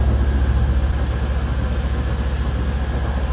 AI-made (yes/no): no